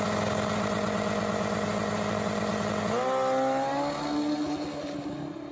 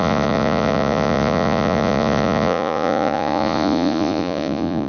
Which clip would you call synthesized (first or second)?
second